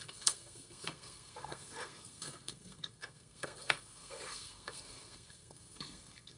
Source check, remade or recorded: remade